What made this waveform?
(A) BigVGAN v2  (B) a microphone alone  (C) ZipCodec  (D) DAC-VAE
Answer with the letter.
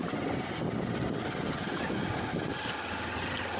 B